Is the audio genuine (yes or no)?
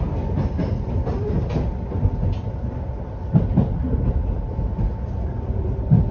yes